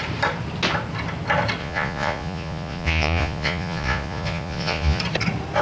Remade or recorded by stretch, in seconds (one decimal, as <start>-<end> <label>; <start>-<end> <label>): 0.0-1.6 recorded; 1.6-5.0 remade; 5.0-5.6 recorded